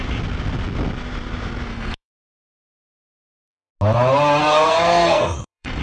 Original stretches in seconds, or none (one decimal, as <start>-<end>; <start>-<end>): 0.0-1.7; 3.7-4.4